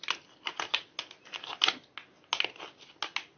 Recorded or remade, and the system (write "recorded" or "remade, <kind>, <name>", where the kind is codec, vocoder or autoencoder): recorded